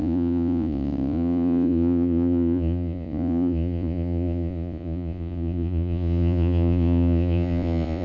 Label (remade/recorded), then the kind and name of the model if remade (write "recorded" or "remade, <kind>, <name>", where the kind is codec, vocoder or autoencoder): remade, vocoder, Vocos